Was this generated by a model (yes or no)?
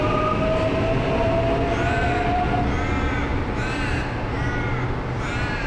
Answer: no